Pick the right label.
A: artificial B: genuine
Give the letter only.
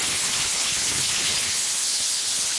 A